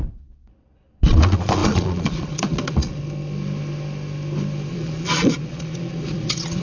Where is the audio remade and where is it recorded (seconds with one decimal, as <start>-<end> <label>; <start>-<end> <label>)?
0.0-3.0 remade; 3.0-4.7 recorded; 4.7-6.6 remade